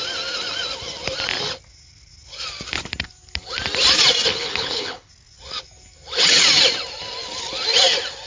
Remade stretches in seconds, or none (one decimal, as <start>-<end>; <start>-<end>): 4.3-5.1